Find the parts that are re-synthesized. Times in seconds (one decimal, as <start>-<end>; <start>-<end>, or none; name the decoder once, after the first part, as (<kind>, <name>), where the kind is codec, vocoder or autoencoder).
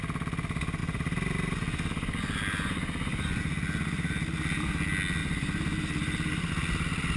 0.8-3.4 (vocoder, BigVGAN v2); 5.2-6.5